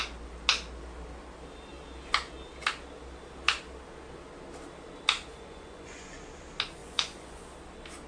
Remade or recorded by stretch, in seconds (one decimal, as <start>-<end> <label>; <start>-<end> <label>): 0.0-5.3 recorded; 5.3-6.2 remade; 6.2-6.8 recorded; 6.8-7.4 remade; 7.4-8.1 recorded

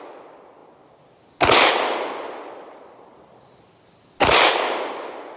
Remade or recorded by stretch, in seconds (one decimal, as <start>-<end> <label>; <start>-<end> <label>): 0.0-5.4 recorded

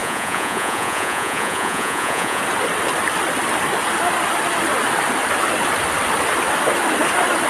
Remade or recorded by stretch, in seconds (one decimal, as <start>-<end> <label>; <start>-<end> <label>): 0.0-2.4 remade; 2.4-7.5 recorded

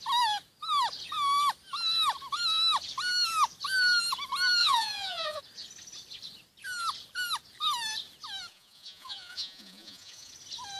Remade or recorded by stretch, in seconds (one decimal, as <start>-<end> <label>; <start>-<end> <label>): 0.0-4.6 recorded; 4.6-5.4 remade; 5.4-8.5 recorded; 8.5-10.3 remade; 10.3-10.8 recorded

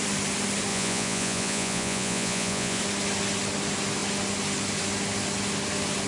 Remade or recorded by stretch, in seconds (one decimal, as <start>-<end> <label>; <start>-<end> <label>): 0.0-0.7 recorded; 0.7-2.8 remade; 2.8-6.1 recorded

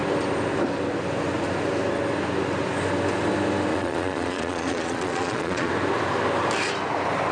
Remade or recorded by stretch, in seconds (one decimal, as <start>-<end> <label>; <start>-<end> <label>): 0.0-3.7 recorded; 3.7-5.7 remade; 5.7-7.3 recorded

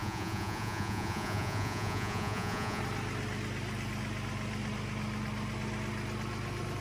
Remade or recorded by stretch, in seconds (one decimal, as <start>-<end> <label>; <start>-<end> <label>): 0.0-2.8 remade; 2.8-6.8 recorded

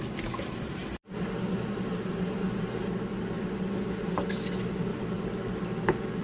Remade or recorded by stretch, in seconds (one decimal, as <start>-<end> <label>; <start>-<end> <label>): 0.0-6.2 recorded